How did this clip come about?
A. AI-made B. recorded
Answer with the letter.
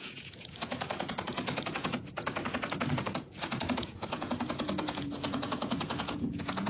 A